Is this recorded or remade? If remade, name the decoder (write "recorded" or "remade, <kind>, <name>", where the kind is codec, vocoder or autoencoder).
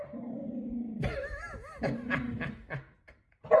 remade, vocoder, BigVGAN v2